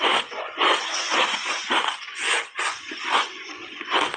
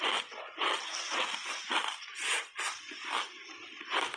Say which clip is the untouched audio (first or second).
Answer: second